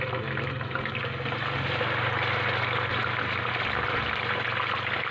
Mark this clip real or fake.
real